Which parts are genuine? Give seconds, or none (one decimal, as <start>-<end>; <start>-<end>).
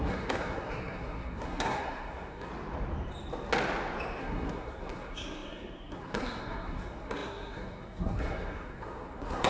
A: 2.5-4.2